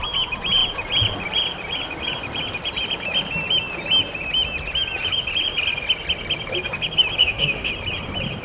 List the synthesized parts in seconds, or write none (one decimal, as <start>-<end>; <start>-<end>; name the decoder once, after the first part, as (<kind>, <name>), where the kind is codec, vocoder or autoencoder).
7.2-7.7 (autoencoder, DAC-VAE)